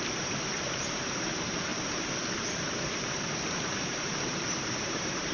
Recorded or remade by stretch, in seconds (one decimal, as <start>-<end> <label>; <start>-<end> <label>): 0.0-5.3 remade